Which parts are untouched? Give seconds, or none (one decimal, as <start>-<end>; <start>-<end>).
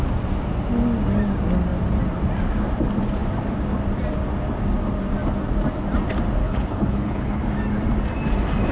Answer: 0.0-6.4; 7.4-8.7